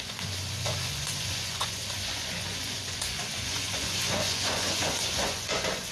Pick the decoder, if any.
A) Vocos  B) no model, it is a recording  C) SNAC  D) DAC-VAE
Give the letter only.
A